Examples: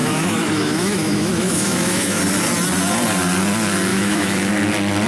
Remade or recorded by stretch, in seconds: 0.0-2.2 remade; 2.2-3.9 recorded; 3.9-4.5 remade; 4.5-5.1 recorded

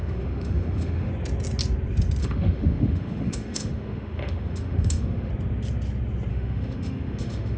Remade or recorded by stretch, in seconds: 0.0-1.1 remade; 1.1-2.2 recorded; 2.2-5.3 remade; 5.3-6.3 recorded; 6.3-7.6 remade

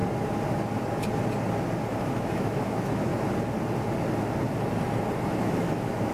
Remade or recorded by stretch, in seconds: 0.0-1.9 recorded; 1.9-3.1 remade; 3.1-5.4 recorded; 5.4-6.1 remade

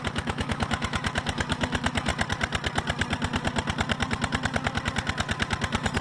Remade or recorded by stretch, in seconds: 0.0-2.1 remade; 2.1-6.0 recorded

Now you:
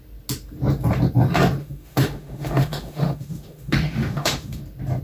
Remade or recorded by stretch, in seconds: 0.0-1.6 recorded; 1.6-4.6 remade; 4.6-5.0 recorded

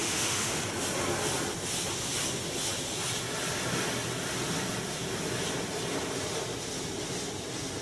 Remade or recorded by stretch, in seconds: 0.0-0.6 remade; 0.6-7.8 recorded